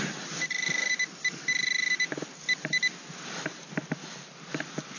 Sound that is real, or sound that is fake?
real